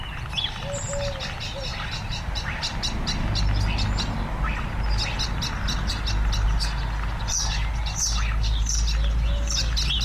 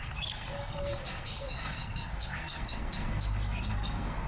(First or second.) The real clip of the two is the first